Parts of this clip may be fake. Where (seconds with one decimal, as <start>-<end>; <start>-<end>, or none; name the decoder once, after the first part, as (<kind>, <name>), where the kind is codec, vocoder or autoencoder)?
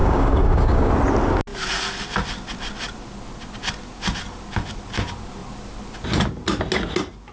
0.0-0.9 (codec, DAC)